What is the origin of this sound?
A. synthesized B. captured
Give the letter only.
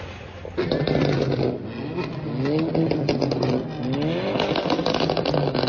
B